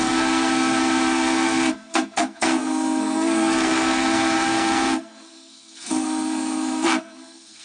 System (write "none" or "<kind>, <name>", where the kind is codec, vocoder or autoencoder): codec, SNAC